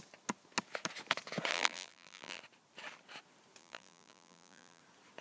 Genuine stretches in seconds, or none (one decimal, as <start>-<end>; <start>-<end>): 0.0-1.5; 2.4-3.6; 4.8-5.2